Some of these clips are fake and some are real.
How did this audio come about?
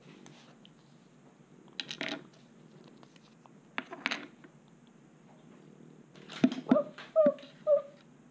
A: real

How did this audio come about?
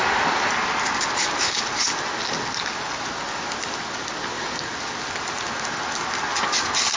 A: real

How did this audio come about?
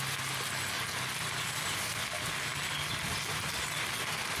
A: real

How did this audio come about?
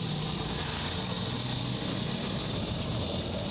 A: real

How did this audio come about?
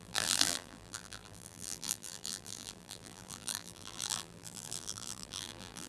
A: fake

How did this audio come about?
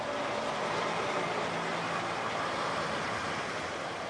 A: real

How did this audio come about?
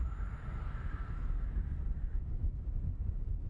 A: real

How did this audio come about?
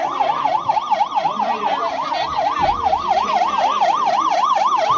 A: real